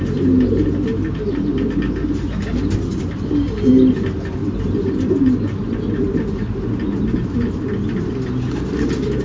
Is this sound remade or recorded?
recorded